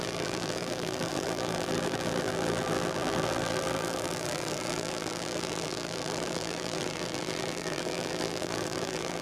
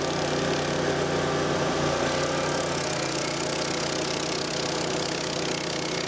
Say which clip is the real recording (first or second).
second